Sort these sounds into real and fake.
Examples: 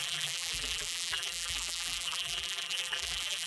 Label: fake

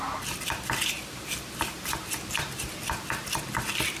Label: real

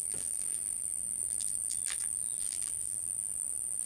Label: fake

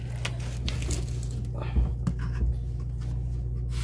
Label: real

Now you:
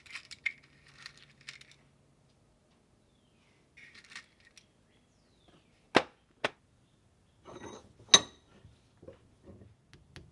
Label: real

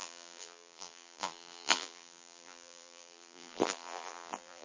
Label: fake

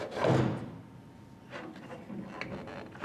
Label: real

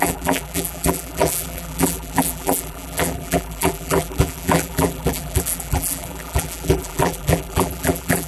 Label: fake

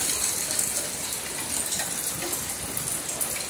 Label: real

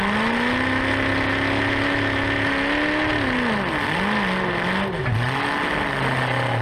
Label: real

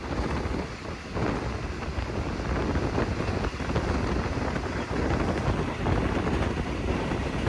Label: real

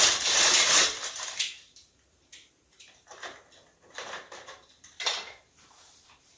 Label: fake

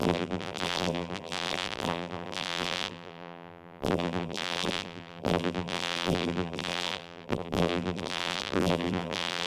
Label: fake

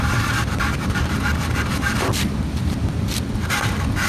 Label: fake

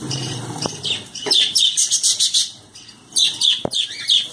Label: fake